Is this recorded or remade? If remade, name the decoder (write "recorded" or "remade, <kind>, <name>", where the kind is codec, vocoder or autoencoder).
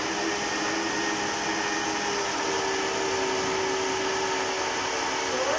recorded